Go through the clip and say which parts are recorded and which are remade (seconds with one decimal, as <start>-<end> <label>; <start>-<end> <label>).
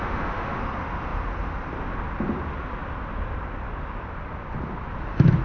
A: 0.0-0.6 remade; 0.6-5.4 recorded